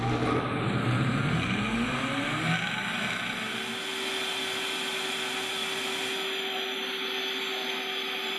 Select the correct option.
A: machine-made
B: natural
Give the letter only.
B